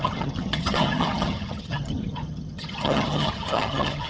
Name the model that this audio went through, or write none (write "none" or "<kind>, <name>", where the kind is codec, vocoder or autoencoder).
vocoder, HiFi-GAN